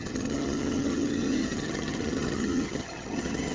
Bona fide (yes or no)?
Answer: no